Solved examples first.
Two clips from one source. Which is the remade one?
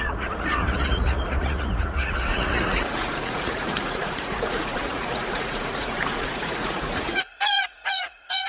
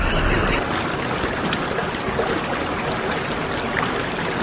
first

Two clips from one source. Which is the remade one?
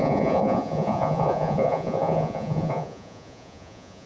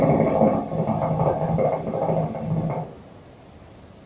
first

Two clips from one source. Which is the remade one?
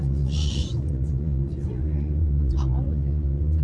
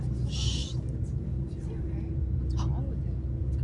first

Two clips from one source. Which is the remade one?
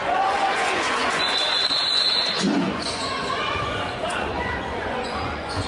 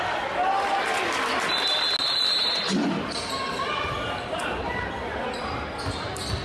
first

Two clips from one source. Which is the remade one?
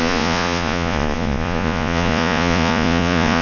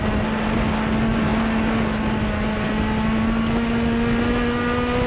first